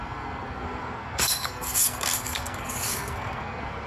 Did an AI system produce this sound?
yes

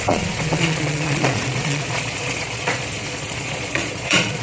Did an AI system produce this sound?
yes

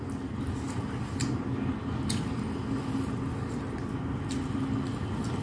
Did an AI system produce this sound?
no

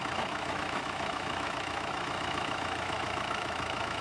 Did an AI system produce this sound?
yes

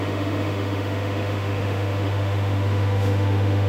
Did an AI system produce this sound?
yes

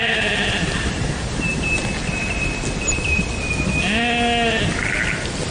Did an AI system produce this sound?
no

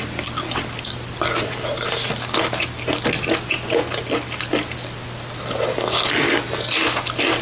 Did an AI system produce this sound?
no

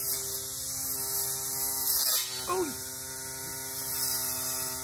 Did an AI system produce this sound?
no